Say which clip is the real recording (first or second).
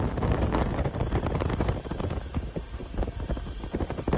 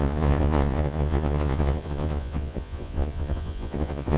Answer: first